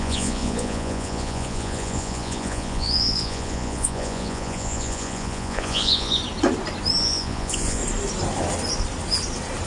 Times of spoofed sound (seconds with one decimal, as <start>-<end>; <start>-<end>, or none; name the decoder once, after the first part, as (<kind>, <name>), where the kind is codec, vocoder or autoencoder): 0.0-6.2 (vocoder, Vocos); 7.0-7.8